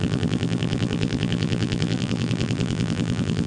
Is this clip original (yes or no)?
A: no